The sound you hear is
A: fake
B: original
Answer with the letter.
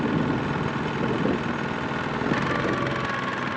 B